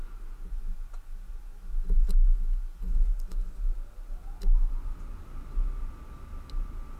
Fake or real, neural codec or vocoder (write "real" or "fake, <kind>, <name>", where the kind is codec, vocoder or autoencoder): real